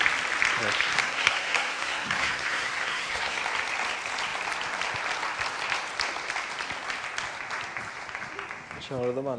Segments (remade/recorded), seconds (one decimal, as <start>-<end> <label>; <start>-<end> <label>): 0.0-1.0 recorded; 1.0-3.4 remade; 3.4-9.4 recorded